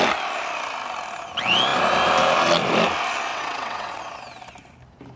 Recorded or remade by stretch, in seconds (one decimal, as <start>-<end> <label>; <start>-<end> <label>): 0.0-3.3 recorded; 3.3-4.0 remade; 4.0-5.2 recorded